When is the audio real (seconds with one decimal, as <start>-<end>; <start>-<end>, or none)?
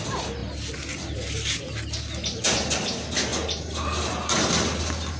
0.0-5.2